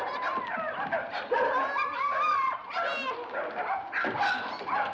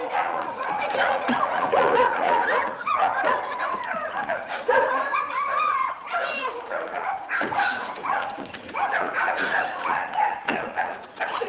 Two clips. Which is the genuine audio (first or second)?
first